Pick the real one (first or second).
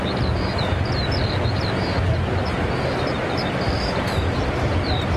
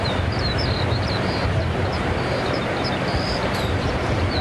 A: first